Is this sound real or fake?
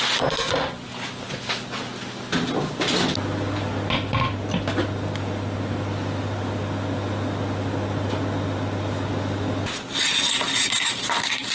real